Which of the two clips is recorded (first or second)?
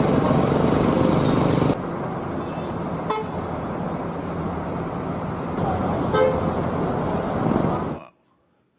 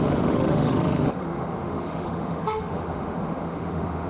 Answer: first